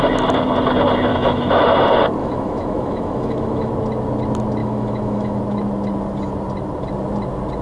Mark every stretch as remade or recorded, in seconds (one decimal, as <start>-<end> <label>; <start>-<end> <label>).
0.0-1.1 recorded; 1.1-1.6 remade; 1.6-2.2 recorded; 2.2-3.7 remade; 3.7-4.6 recorded; 4.6-5.4 remade; 5.4-7.6 recorded